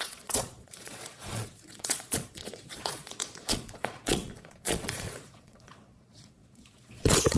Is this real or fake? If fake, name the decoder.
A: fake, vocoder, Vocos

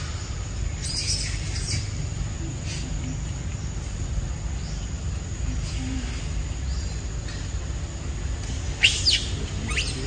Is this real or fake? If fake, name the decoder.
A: real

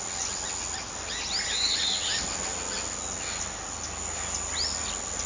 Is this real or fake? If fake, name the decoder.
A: real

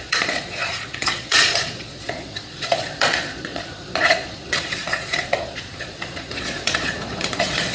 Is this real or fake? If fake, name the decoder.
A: fake, vocoder, Vocos